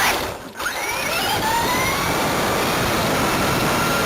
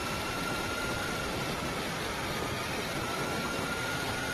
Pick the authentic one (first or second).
first